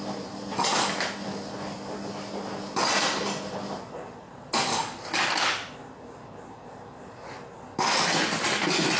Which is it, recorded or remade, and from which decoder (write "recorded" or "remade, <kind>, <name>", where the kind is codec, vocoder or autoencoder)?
recorded